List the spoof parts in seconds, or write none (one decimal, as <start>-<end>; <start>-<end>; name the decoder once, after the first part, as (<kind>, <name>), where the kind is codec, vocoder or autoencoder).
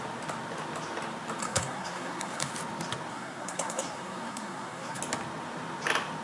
1.4-2.5 (codec, SNAC); 3.1-5.0